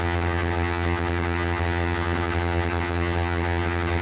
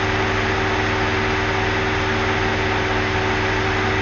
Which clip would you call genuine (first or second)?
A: second